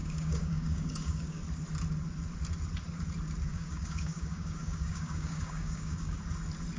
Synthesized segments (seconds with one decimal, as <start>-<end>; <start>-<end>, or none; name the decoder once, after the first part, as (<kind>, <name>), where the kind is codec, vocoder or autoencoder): 0.0-1.4 (codec, DAC); 3.5-6.2